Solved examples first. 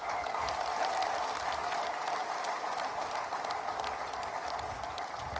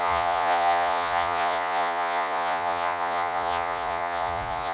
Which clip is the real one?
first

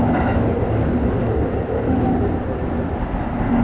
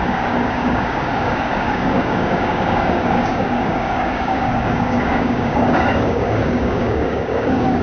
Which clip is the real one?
first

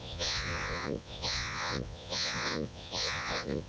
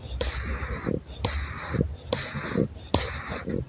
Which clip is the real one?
second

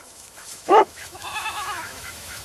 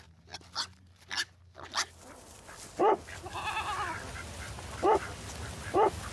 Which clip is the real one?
second